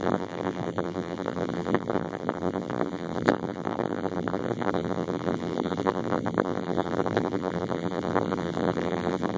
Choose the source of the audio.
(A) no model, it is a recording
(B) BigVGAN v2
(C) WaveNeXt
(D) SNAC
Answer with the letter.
B